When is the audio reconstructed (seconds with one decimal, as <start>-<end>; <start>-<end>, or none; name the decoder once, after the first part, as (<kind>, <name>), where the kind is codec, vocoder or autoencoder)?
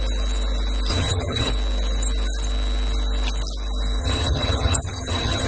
0.9-1.5 (vocoder, HiFi-GAN); 4.0-5.5